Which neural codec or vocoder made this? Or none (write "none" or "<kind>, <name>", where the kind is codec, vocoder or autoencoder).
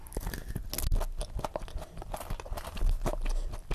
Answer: none